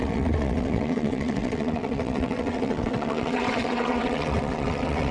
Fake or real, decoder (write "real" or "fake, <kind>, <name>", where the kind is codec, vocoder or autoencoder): fake, vocoder, WaveNeXt